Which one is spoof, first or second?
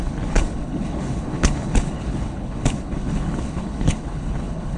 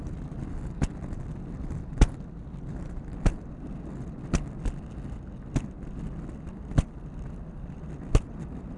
first